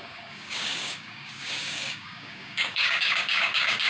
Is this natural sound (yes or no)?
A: no